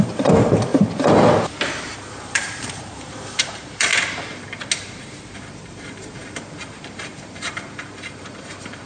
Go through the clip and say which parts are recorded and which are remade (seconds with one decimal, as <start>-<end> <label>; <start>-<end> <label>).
0.0-0.7 remade; 0.7-1.8 recorded; 1.8-3.9 remade; 3.9-5.7 recorded; 5.7-8.9 remade